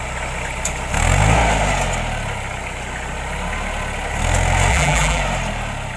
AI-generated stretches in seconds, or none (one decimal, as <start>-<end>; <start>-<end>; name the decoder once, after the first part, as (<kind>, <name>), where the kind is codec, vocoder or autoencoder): 4.7-5.2 (vocoder, BigVGAN v2)